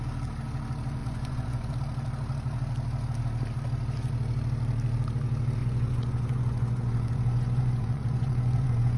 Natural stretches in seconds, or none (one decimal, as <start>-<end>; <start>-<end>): 0.0-1.0; 1.7-5.6